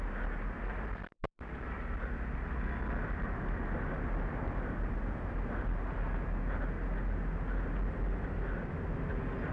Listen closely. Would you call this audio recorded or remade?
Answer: recorded